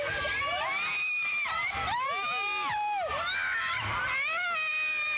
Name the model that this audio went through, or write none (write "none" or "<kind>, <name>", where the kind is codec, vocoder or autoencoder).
vocoder, BigVGAN v2